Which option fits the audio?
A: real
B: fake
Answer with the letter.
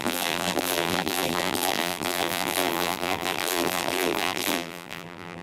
B